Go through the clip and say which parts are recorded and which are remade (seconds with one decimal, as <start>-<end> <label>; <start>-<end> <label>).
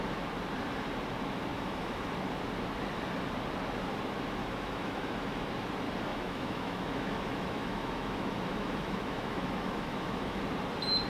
0.0-1.5 recorded; 1.5-2.1 remade; 2.1-4.4 recorded; 4.4-5.5 remade; 5.5-6.1 recorded; 6.1-10.4 remade; 10.4-11.1 recorded